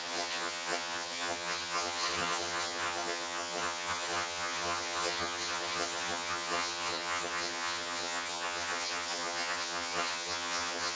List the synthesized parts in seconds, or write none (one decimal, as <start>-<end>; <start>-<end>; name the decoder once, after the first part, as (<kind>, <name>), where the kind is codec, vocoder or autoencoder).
0.0-11.0 (vocoder, HiFi-GAN)